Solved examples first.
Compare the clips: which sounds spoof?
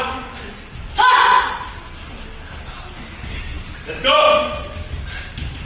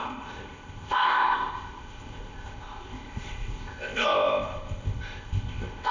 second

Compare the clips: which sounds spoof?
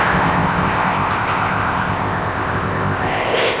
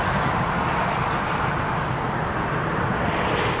first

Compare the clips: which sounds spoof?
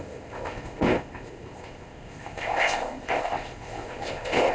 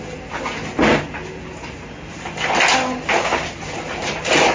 first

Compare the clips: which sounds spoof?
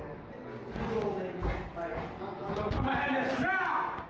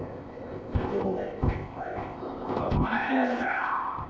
second